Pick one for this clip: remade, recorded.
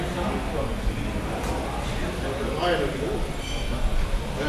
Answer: recorded